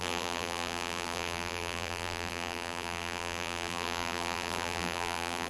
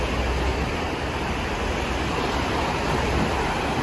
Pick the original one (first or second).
second